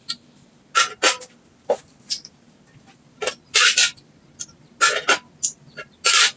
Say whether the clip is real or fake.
real